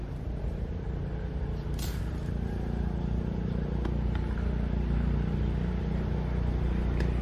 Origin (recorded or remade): recorded